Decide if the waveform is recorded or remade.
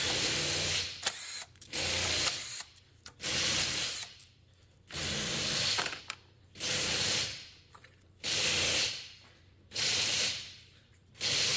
remade